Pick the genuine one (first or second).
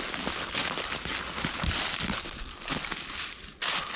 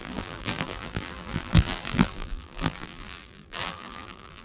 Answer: first